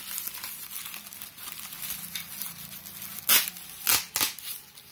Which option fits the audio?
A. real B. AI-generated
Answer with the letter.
A